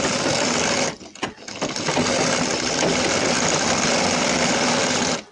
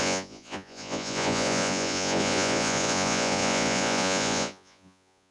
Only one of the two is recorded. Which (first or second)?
first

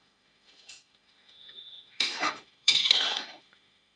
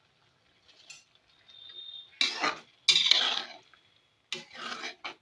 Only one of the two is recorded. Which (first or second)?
second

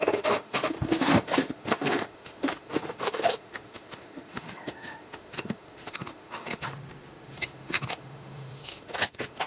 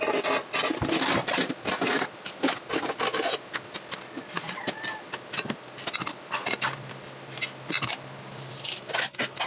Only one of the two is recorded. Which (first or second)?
second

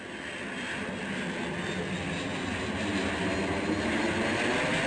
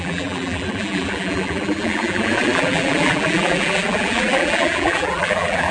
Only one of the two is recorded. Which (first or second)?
first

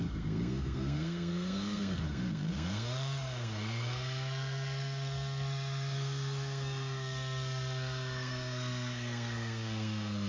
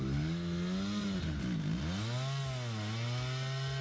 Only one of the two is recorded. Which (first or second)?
second